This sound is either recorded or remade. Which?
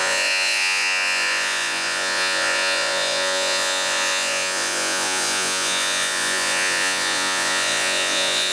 remade